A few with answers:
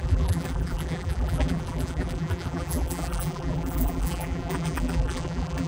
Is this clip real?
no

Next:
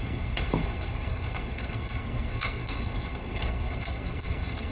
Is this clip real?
no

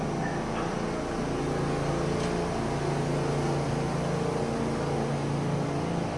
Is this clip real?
yes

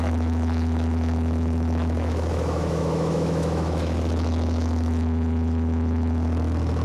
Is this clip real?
no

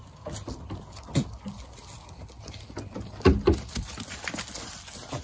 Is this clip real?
yes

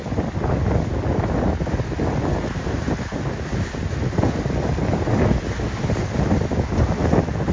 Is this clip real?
yes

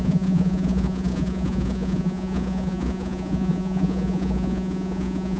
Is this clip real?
no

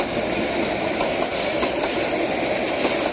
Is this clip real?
yes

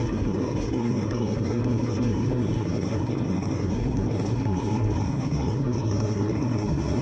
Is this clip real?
no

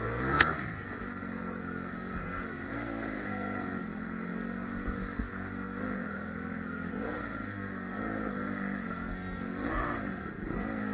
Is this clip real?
no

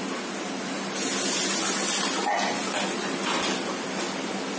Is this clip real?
yes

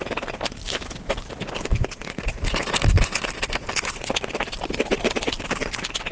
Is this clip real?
no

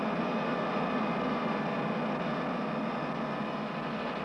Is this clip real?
yes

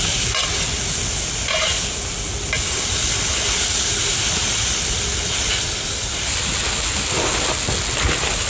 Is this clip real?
yes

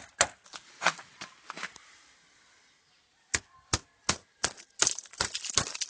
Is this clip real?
yes